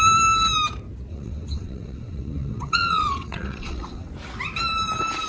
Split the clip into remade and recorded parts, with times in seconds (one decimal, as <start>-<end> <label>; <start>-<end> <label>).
0.0-1.1 recorded; 1.1-4.1 remade; 4.1-5.3 recorded